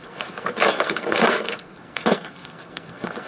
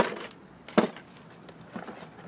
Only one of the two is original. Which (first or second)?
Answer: second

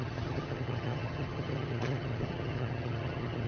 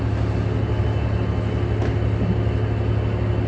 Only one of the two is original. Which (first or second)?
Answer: second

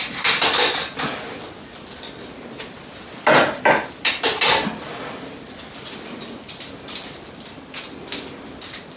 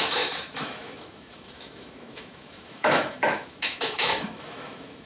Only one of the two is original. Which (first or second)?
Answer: first